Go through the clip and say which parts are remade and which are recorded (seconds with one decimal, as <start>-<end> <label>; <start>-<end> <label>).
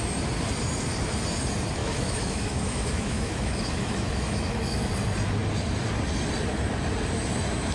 0.0-1.8 recorded; 1.8-4.9 remade; 4.9-7.7 recorded